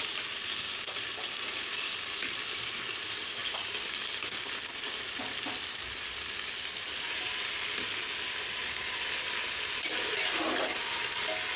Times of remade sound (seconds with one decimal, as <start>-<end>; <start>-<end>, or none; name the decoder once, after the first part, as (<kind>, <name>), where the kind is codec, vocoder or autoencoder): none